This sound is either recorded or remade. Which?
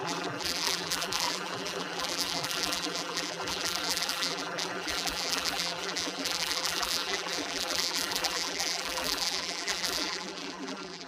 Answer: remade